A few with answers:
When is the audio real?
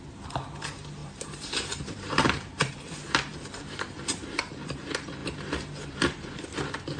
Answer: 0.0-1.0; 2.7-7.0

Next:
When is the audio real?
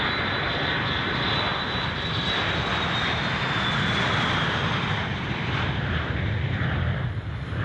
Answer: 0.0-5.1; 7.1-7.6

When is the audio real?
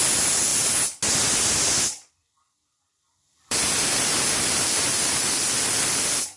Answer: 0.5-1.8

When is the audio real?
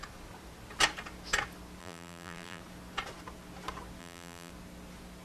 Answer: 0.0-1.8; 2.6-4.0; 4.5-5.2